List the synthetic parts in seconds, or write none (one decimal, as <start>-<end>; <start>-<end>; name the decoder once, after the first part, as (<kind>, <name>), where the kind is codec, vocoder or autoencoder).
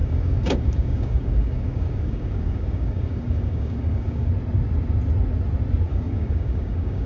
0.0-4.3 (codec, DAC); 5.9-7.1